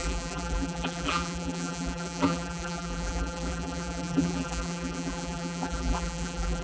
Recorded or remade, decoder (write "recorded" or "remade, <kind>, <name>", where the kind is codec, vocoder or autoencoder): remade, vocoder, BigVGAN v2